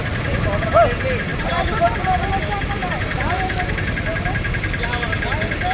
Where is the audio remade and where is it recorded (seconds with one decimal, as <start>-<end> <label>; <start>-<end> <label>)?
0.0-1.3 recorded; 1.3-1.9 remade; 1.9-2.8 recorded; 2.8-3.7 remade; 3.7-5.7 recorded